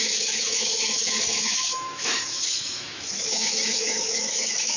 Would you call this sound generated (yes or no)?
yes